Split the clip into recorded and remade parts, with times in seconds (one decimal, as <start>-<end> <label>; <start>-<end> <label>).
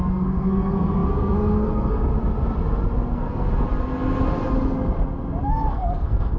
0.0-2.1 remade; 2.1-3.1 recorded; 3.1-3.5 remade; 3.5-5.4 recorded; 5.4-6.4 remade